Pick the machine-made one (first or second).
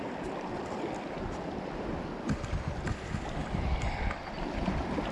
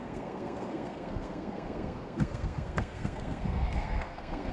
second